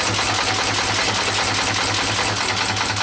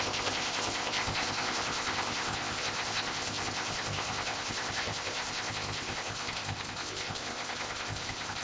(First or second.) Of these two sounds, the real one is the first